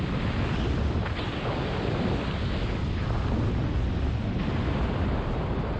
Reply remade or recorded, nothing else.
recorded